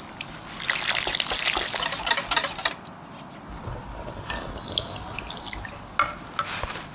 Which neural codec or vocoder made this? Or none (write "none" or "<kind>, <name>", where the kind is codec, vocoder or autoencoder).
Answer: none